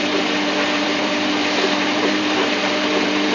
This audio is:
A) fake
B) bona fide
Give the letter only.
A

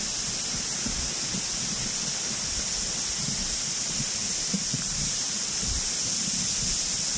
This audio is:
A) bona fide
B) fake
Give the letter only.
A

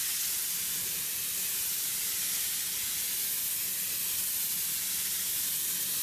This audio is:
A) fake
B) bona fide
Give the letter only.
B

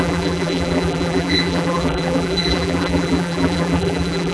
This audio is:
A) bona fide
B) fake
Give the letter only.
B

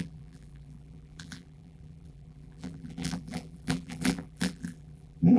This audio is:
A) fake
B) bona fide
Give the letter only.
A